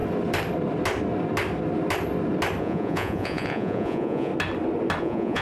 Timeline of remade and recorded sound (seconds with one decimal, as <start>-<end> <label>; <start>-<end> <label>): 0.0-2.6 recorded; 2.6-4.3 remade; 4.3-5.0 recorded; 5.0-5.4 remade